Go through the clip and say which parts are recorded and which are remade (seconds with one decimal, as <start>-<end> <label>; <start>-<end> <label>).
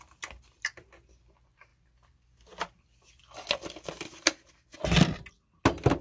0.0-6.0 recorded